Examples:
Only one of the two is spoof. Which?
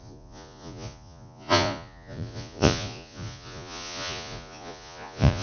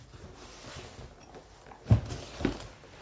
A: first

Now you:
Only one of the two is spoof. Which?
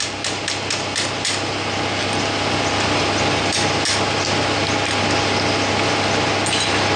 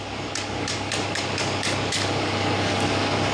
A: second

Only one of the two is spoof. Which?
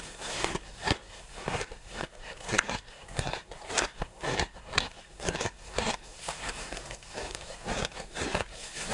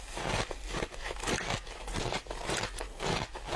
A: first